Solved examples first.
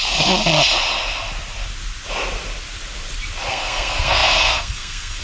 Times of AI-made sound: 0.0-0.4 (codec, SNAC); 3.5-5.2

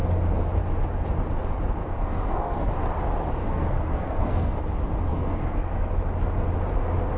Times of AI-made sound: 1.8-2.7 (codec, SNAC); 3.4-4.6; 5.1-5.9